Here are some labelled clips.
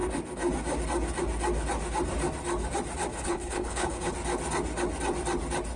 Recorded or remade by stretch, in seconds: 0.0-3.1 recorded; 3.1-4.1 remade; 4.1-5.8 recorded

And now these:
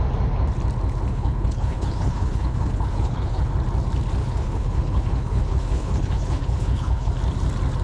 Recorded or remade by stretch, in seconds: 0.0-1.1 recorded; 1.1-3.5 remade; 3.5-4.2 recorded; 4.2-7.1 remade; 7.1-7.8 recorded

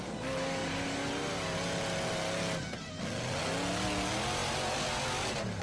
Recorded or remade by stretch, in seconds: 0.0-5.6 recorded

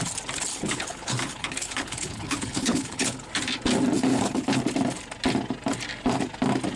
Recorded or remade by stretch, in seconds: 0.0-0.5 recorded; 0.5-3.3 remade; 3.3-4.1 recorded; 4.1-4.6 remade; 4.6-6.8 recorded

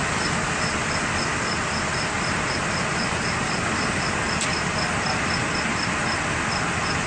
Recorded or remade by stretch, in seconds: 0.0-7.1 recorded